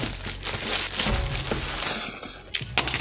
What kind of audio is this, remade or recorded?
recorded